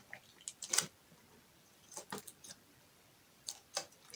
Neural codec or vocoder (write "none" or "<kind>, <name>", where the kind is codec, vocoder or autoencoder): none